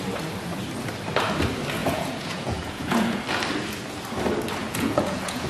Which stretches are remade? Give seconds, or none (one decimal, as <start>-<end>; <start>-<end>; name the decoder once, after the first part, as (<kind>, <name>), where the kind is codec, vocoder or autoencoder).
1.8-3.2 (vocoder, Vocos); 4.6-5.5